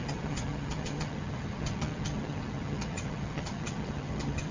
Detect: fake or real fake